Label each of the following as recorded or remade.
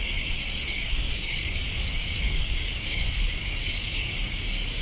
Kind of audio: remade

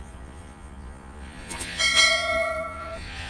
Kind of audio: remade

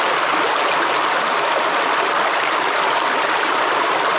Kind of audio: recorded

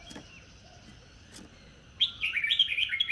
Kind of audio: recorded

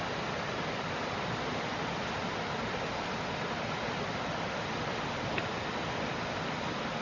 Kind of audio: recorded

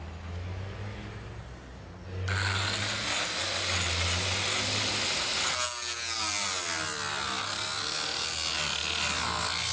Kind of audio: recorded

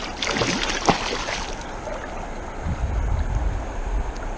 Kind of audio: recorded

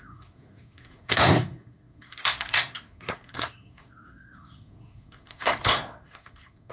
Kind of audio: remade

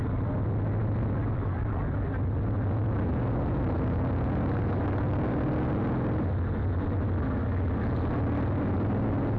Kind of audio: recorded